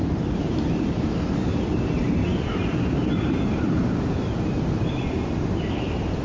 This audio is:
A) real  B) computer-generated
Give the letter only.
B